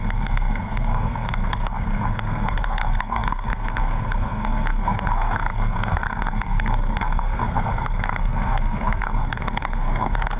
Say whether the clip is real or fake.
fake